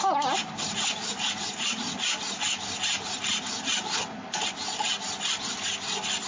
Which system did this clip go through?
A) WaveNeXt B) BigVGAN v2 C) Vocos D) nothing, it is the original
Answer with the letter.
D